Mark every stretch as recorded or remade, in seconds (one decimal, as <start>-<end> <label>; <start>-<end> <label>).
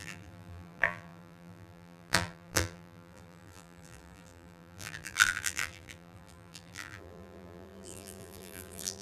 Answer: 0.0-9.0 remade